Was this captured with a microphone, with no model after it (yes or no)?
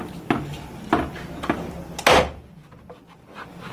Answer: yes